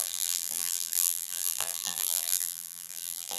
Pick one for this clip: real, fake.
fake